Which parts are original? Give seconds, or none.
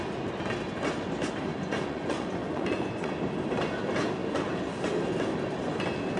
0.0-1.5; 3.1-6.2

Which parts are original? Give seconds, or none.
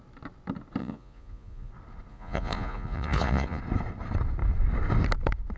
0.0-0.8; 1.7-2.1; 3.6-5.6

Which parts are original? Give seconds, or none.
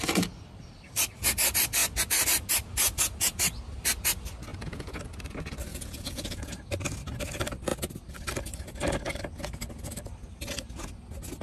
0.0-4.5; 5.0-5.7; 6.5-11.4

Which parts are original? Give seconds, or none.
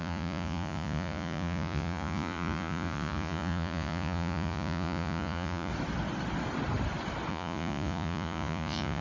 5.7-7.3